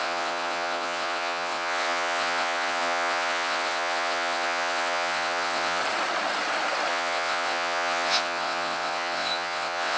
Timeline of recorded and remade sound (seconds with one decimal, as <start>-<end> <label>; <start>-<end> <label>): 0.0-5.8 remade; 5.8-6.9 recorded; 6.9-10.0 remade